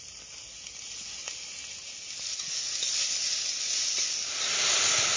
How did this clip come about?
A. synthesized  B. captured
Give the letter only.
B